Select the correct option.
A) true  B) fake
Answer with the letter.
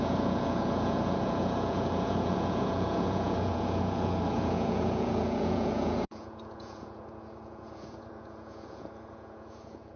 B